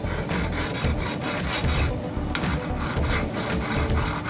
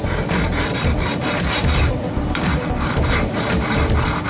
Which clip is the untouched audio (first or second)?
first